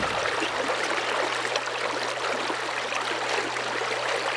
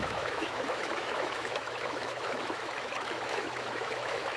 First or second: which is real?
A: first